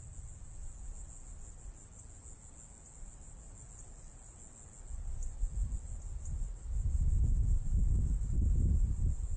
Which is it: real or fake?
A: real